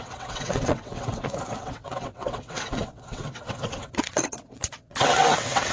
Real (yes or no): no